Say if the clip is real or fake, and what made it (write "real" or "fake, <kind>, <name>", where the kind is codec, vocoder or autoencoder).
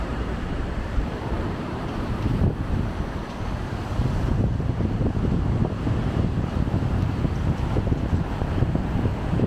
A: fake, vocoder, BigVGAN v2